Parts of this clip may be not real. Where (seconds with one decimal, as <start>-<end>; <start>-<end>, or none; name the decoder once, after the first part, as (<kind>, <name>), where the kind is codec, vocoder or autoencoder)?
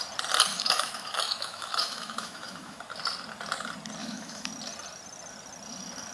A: 0.5-2.8 (autoencoder, DAC-VAE); 4.0-4.5